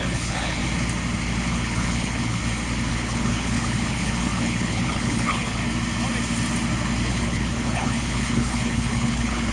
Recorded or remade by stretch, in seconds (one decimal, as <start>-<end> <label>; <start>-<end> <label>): 0.0-0.6 remade; 0.6-1.5 recorded; 1.5-2.4 remade; 2.4-2.9 recorded; 2.9-5.6 remade; 5.6-7.1 recorded; 7.1-9.5 remade